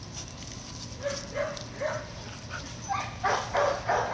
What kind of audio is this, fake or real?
real